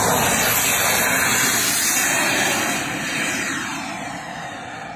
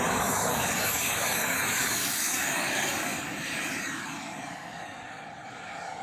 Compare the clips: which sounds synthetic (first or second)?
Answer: second